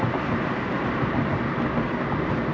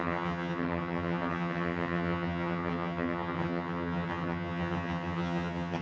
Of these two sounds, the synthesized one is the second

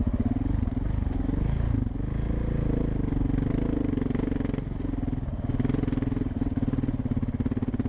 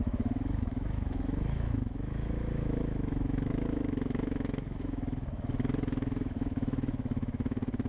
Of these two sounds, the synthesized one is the second